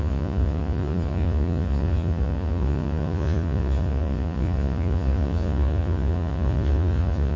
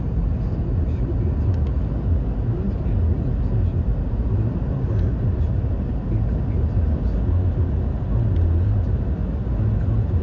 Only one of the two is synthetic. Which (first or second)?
first